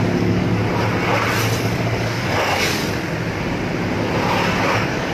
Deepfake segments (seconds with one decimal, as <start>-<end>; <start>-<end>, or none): 0.0-0.6; 1.6-2.8; 4.6-5.1